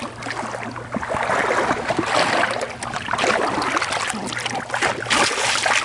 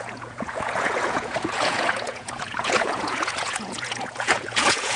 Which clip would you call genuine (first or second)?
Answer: first